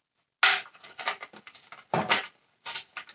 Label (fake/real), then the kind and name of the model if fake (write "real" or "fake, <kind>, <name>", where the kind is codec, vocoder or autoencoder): real